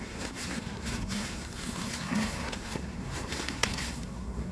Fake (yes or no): yes